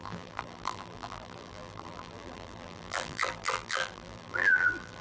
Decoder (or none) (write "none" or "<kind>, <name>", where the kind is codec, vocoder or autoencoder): vocoder, BigVGAN v2